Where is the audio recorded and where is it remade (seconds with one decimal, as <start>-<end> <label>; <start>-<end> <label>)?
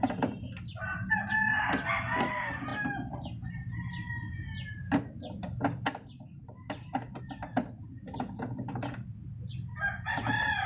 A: 0.0-10.7 recorded